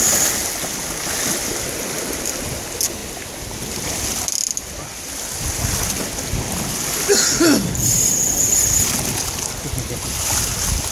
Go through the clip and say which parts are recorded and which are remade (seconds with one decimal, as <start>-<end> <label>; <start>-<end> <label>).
0.0-10.9 recorded